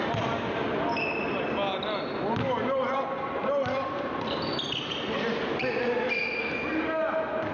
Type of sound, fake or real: real